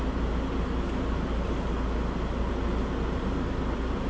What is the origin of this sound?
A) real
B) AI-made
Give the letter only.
A